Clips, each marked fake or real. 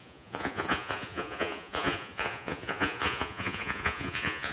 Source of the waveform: fake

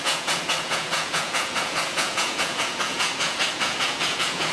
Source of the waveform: fake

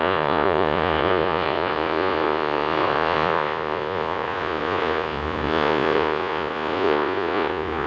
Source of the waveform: fake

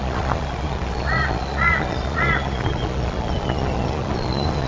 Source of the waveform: fake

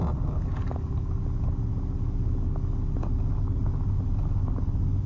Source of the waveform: real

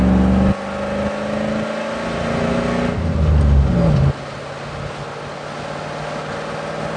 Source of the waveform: real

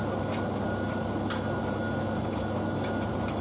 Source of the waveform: real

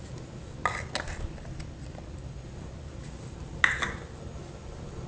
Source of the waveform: real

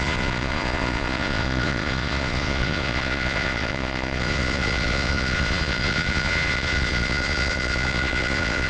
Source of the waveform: fake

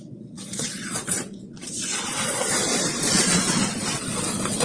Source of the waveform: fake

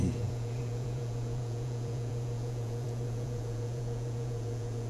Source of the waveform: fake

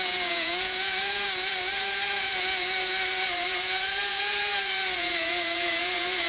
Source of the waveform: fake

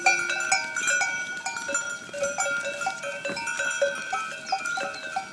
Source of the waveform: real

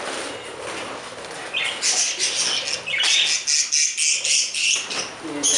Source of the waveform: real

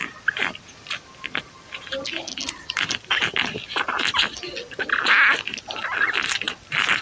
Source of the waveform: real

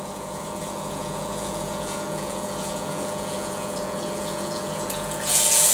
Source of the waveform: fake